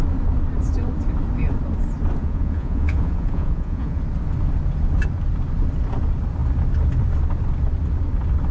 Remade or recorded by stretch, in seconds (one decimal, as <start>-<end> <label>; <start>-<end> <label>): 0.0-2.2 recorded; 2.2-4.0 remade; 4.0-8.5 recorded